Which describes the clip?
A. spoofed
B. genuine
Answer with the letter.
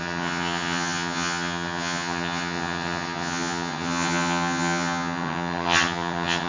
A